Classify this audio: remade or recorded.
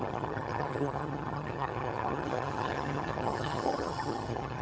remade